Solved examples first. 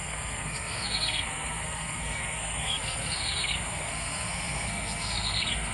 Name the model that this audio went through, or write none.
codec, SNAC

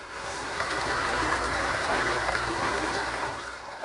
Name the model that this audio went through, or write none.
codec, SNAC